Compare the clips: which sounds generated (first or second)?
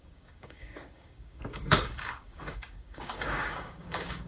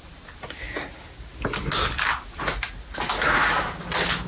first